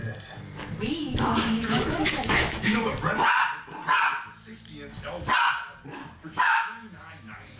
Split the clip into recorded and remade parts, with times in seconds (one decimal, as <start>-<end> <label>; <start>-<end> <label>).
0.0-1.0 recorded; 1.0-2.9 remade; 2.9-6.3 recorded; 6.3-7.6 remade